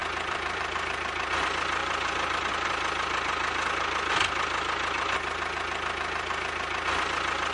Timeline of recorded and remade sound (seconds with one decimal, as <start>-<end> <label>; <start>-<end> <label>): 0.0-1.4 remade; 1.4-1.8 recorded; 1.8-2.4 remade; 2.4-7.5 recorded